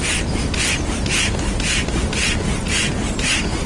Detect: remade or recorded recorded